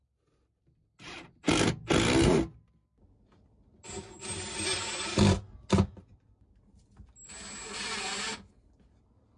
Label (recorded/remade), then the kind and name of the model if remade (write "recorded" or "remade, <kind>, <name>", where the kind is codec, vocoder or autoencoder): recorded